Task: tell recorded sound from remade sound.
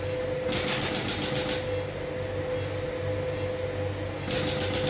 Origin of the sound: recorded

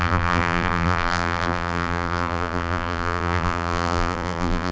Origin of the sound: remade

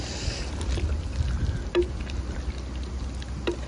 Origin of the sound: recorded